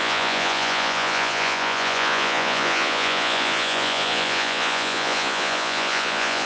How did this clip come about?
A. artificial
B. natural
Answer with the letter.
A